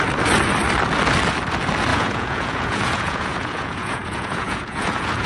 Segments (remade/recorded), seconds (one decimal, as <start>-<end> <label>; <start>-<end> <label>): 0.0-1.9 recorded; 1.9-5.3 remade